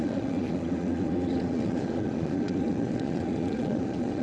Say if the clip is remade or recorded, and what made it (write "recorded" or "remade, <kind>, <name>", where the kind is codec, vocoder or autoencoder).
remade, vocoder, Vocos